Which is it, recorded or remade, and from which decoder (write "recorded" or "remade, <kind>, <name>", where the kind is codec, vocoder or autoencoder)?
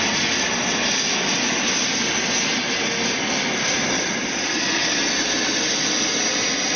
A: recorded